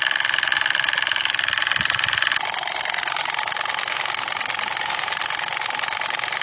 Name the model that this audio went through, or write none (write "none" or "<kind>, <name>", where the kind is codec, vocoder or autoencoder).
none